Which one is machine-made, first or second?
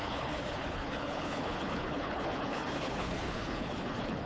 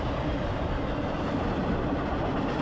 first